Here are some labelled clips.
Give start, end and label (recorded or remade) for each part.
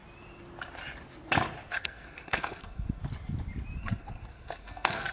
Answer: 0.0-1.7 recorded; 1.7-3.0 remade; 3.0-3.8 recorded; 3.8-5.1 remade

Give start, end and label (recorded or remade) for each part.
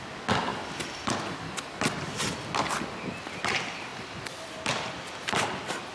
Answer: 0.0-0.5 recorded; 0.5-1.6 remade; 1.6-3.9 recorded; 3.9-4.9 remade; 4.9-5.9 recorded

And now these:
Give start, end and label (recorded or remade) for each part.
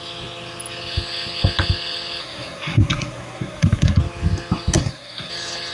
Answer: 0.0-2.2 recorded; 2.2-4.0 remade; 4.0-4.8 recorded; 4.8-5.3 remade; 5.3-5.7 recorded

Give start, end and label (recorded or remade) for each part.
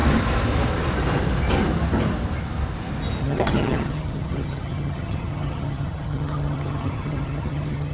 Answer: 0.0-3.2 recorded; 3.2-7.9 remade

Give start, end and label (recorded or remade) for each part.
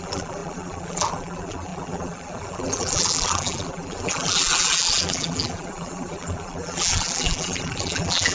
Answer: 0.0-8.3 remade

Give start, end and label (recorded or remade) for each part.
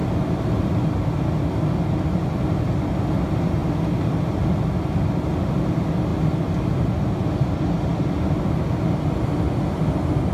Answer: 0.0-10.3 recorded